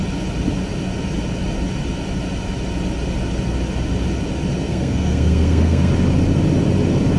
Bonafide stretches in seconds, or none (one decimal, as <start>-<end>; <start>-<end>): 0.0-4.7; 5.9-7.2